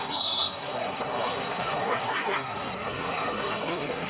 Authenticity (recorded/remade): remade